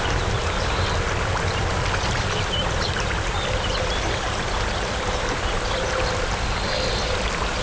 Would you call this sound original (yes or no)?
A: yes